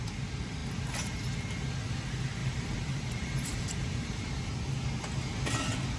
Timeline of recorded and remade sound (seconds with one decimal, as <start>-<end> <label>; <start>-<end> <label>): 0.0-2.4 recorded; 2.4-4.3 remade; 4.3-6.0 recorded